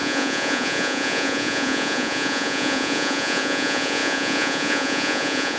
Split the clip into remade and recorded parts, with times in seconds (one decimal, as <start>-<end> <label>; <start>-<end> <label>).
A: 0.0-5.6 remade